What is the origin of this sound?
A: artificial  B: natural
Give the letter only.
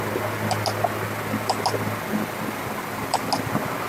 B